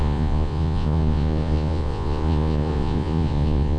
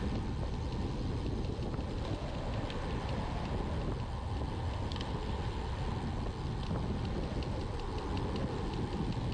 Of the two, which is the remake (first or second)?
first